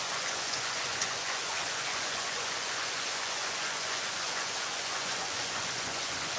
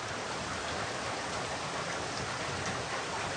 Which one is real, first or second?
second